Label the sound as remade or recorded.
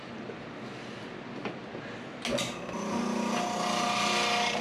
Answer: recorded